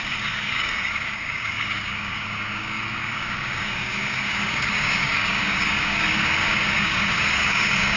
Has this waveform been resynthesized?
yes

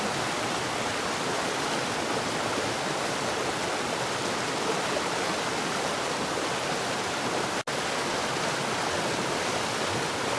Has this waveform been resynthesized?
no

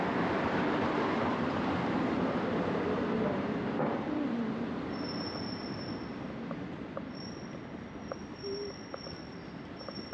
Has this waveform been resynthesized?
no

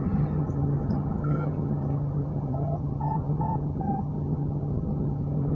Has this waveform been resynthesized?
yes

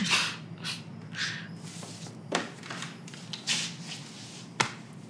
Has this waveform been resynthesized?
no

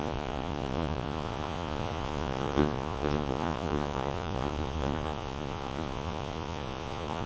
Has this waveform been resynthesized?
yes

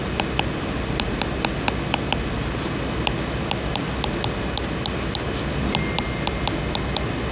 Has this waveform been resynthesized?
no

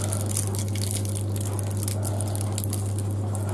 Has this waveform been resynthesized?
no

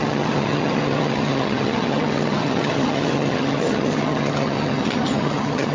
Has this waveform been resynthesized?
yes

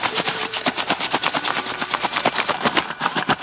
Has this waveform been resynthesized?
yes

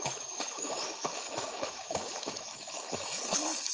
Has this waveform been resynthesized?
yes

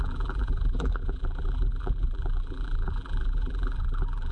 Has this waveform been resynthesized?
yes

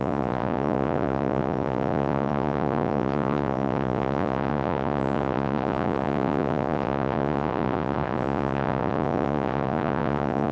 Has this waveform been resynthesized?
yes